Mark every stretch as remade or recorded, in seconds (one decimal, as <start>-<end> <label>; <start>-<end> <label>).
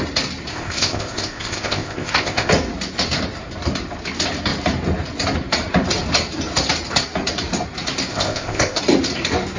0.0-0.5 recorded; 0.5-2.5 remade; 2.5-8.1 recorded; 8.1-8.8 remade; 8.8-9.6 recorded